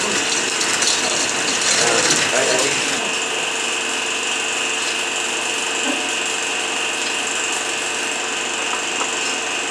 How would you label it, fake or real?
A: real